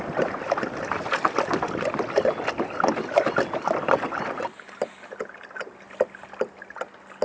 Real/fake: real